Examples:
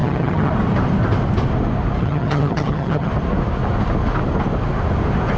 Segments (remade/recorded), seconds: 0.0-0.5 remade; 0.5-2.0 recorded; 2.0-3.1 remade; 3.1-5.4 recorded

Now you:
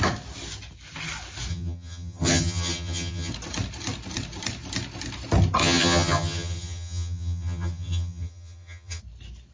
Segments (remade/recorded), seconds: 0.0-1.5 recorded; 1.5-3.3 remade; 3.3-5.6 recorded; 5.6-9.0 remade; 9.0-9.5 recorded

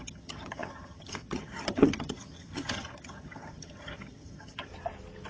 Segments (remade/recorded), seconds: 0.0-4.7 remade; 4.7-5.3 recorded

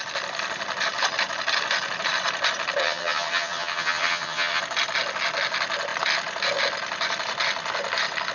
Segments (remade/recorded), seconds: 0.0-2.8 recorded; 2.8-4.6 remade; 4.6-8.3 recorded